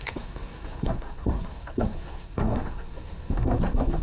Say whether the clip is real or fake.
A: fake